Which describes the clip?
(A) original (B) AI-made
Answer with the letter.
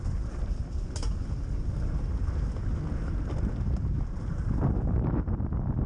A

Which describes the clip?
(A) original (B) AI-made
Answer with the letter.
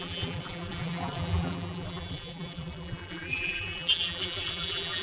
B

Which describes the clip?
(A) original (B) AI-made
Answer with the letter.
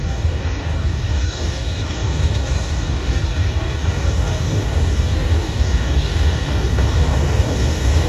B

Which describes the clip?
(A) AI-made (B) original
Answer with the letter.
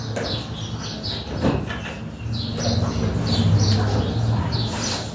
B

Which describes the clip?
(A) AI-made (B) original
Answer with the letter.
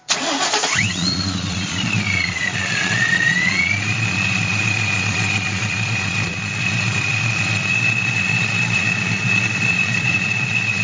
A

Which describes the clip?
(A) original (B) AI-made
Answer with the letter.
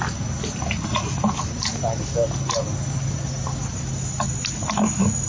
A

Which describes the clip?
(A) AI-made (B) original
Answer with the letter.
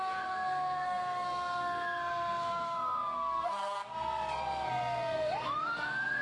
A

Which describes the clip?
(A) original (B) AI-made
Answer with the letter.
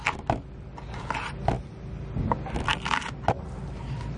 A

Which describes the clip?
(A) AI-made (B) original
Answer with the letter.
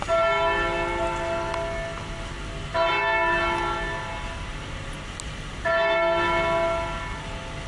B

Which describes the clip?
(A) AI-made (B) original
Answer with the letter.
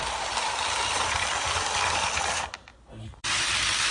B